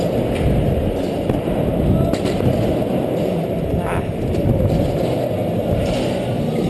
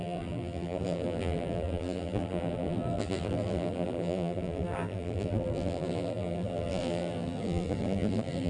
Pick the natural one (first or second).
first